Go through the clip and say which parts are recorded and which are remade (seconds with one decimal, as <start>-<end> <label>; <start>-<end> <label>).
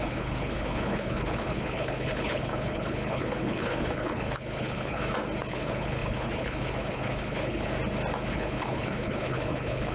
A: 0.0-5.0 remade; 5.0-5.5 recorded; 5.5-7.7 remade; 7.7-8.3 recorded; 8.3-9.9 remade